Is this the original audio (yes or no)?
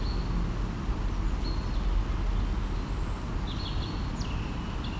yes